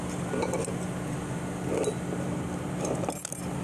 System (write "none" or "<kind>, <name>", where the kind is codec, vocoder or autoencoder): none